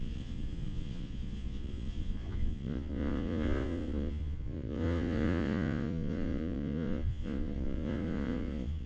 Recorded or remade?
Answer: remade